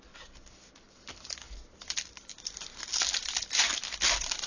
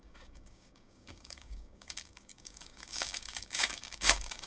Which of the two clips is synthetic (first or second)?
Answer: second